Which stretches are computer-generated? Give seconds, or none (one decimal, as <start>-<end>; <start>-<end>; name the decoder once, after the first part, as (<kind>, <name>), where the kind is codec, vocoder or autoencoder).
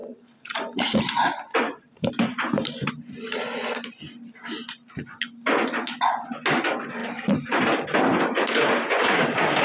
0.0-2.9 (vocoder, BigVGAN v2); 7.0-7.6